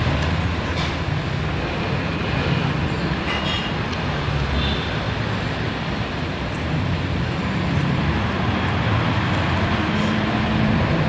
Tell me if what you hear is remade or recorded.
recorded